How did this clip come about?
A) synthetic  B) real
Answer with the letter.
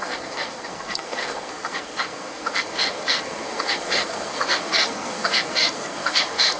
A